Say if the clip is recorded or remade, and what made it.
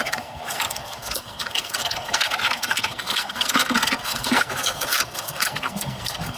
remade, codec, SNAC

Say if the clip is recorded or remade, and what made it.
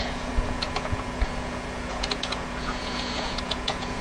remade, vocoder, Vocos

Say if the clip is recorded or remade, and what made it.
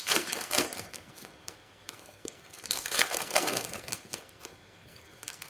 remade, codec, SNAC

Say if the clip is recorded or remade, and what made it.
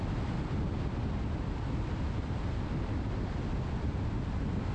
recorded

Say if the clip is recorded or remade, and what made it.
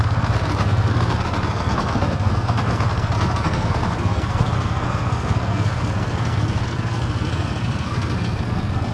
remade, codec, SNAC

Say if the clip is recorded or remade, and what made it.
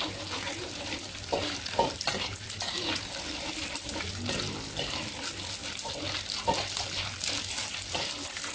recorded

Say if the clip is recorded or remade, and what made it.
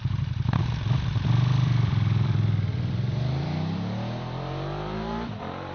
remade, vocoder, BigVGAN v2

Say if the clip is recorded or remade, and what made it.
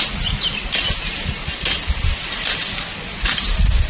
recorded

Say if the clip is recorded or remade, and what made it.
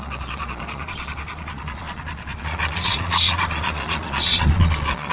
remade, vocoder, Vocos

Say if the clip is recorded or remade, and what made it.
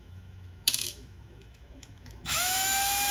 remade, autoencoder, DAC-VAE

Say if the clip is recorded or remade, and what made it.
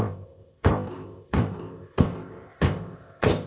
remade, codec, ZipCodec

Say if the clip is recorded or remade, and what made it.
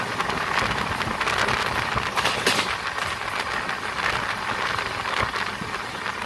recorded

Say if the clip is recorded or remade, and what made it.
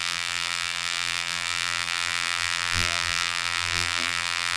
remade, vocoder, BigVGAN v2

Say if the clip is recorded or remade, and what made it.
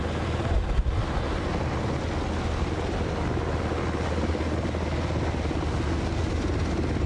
recorded